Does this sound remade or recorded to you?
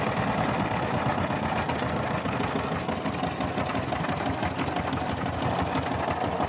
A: recorded